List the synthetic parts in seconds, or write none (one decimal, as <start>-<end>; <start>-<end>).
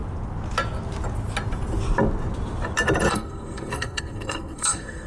3.1-5.1